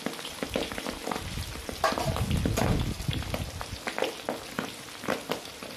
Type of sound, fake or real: real